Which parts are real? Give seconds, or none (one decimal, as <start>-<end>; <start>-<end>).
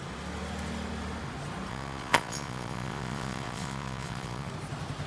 0.0-1.7; 4.5-5.1